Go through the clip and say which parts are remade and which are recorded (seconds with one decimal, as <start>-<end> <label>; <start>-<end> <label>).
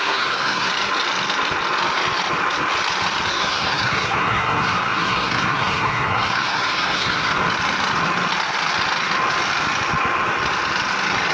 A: 0.0-0.7 remade; 0.7-3.3 recorded; 3.3-7.3 remade; 7.3-11.3 recorded